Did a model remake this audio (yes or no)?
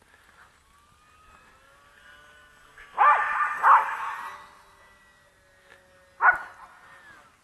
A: no